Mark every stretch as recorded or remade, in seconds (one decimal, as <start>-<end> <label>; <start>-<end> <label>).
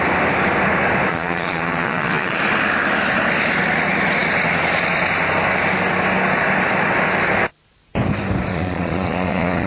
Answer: 0.0-1.1 recorded; 1.1-2.4 remade; 2.4-8.5 recorded; 8.5-9.7 remade